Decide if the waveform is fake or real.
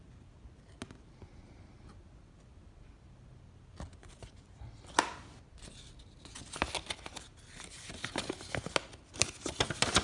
real